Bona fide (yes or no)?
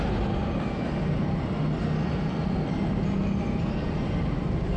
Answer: yes